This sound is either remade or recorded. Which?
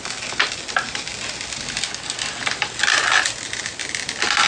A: recorded